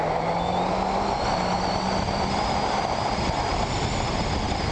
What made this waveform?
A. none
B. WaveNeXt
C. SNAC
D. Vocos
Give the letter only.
A